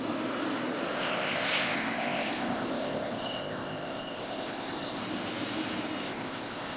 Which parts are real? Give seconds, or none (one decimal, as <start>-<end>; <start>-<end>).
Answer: 0.0-0.9; 5.0-6.0